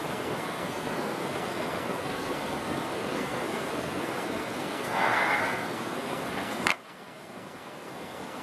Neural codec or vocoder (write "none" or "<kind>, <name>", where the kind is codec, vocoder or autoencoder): codec, SNAC